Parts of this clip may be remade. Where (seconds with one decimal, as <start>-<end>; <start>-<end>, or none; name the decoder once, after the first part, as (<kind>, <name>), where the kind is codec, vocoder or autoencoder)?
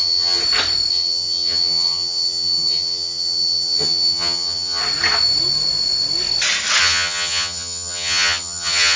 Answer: 0.0-0.4 (vocoder, HiFi-GAN); 0.9-4.8; 6.8-9.0